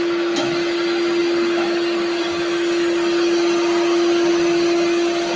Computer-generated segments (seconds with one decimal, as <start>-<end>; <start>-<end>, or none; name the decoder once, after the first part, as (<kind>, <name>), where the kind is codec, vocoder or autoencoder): none